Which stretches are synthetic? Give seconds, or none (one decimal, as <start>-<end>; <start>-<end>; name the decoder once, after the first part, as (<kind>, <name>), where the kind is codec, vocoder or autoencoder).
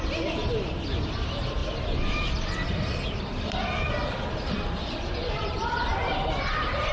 1.6-5.1 (vocoder, BigVGAN v2); 5.9-6.9